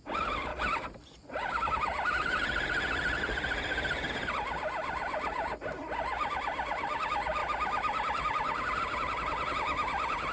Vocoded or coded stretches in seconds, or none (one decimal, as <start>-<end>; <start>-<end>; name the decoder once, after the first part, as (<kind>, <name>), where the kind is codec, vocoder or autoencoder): none